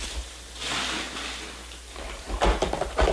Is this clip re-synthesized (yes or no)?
no